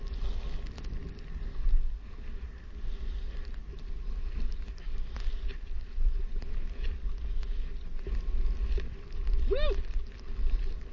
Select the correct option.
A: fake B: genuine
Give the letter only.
B